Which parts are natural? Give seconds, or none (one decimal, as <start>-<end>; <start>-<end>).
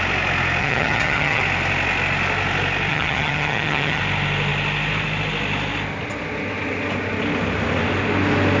0.0-0.6; 1.4-2.9; 4.0-8.6